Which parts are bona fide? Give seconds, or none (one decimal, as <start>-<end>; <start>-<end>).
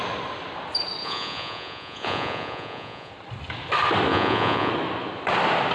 0.0-1.0; 3.1-4.1; 4.7-5.7